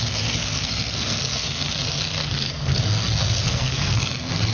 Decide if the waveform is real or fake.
fake